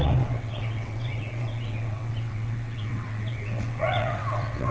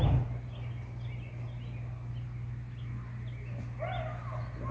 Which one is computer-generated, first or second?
first